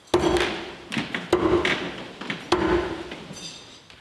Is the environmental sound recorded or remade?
recorded